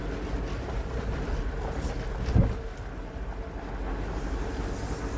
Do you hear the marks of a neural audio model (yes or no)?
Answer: no